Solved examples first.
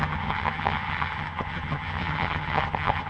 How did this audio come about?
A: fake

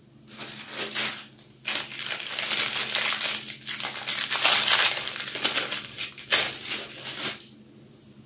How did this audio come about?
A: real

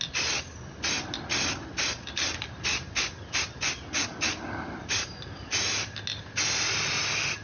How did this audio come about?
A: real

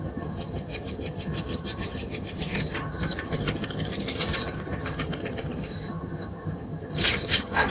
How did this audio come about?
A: fake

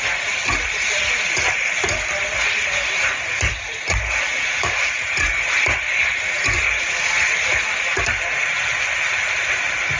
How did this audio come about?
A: real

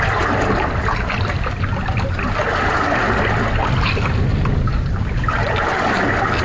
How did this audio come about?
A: real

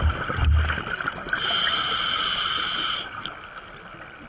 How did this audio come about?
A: real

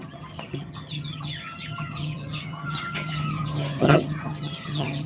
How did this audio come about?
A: fake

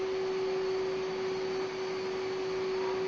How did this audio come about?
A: real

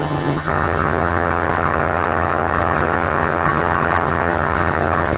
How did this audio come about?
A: fake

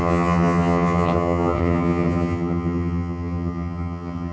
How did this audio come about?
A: fake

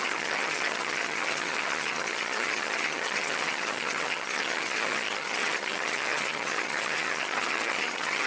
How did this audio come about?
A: fake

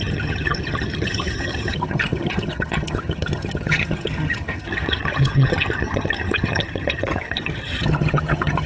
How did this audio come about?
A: fake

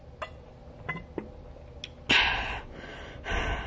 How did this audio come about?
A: real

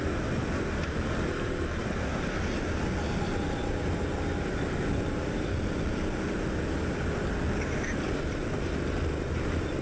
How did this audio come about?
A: real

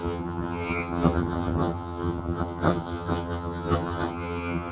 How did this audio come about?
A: fake